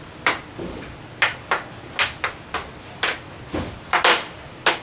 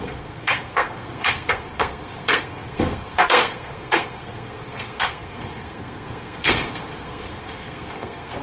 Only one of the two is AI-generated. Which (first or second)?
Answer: second